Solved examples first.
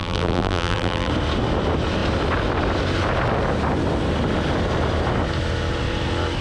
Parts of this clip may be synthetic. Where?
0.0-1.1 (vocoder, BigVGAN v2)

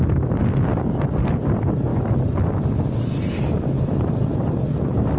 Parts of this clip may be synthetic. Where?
0.7-1.2 (vocoder, BigVGAN v2); 1.9-5.2